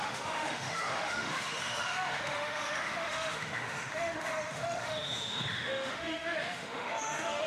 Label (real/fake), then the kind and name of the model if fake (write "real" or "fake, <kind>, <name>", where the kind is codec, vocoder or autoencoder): fake, autoencoder, DAC-VAE